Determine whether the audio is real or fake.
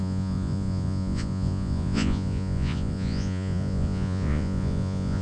fake